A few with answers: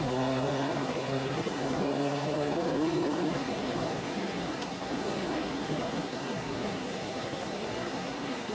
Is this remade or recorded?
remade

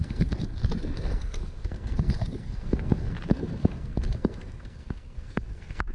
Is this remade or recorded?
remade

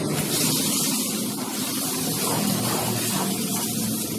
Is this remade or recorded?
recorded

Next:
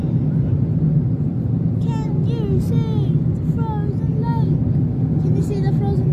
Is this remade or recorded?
recorded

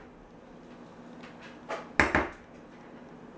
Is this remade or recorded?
recorded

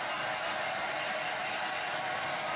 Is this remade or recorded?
recorded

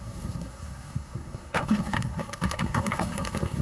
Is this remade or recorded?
remade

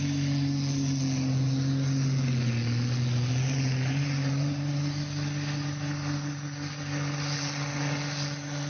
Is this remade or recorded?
recorded